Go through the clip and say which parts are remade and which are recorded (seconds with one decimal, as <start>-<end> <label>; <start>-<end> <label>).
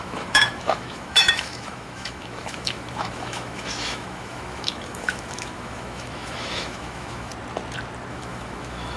0.0-7.3 remade; 7.3-8.1 recorded; 8.1-9.0 remade